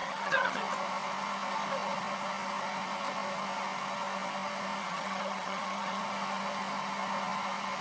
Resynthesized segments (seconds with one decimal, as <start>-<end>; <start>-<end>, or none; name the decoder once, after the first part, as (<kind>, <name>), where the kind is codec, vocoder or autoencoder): 0.0-0.6 (vocoder, HiFi-GAN); 4.8-6.0